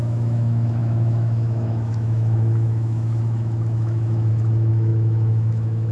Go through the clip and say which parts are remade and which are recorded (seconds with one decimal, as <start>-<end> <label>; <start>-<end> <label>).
0.0-5.9 remade